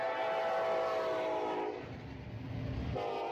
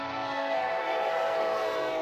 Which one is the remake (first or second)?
second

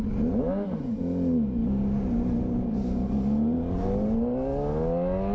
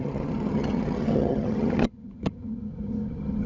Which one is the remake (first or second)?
second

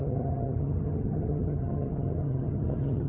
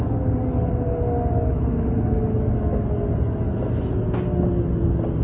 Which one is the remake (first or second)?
first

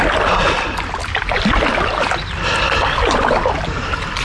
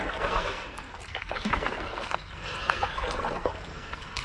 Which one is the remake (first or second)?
second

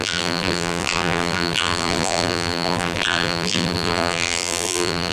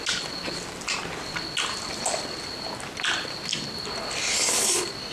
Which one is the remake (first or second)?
first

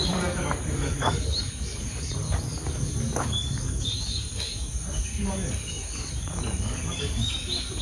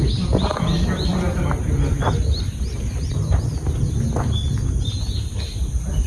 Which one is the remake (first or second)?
first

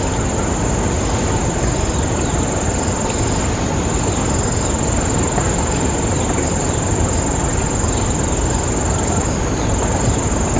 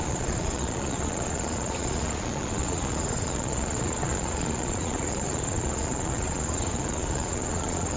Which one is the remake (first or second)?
second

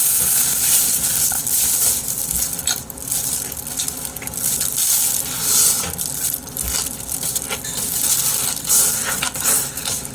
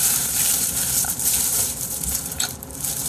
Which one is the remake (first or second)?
second